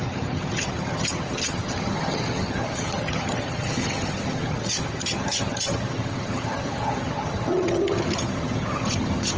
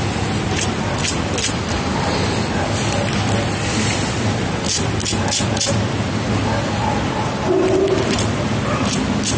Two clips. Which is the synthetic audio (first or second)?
first